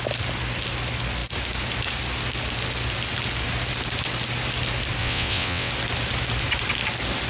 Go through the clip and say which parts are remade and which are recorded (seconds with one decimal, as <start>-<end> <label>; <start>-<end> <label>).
0.0-5.0 recorded; 5.0-5.7 remade; 5.7-7.3 recorded